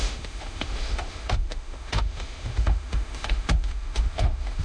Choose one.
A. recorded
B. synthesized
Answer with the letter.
B